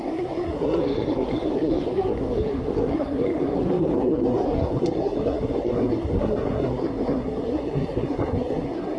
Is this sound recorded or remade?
remade